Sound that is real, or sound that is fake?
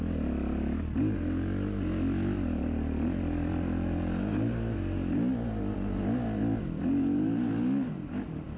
real